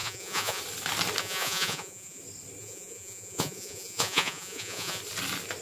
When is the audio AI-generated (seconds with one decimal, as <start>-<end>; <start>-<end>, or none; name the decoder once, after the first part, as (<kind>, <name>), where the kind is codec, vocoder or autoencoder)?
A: 0.0-0.6 (vocoder, Vocos); 1.2-2.2; 2.6-5.0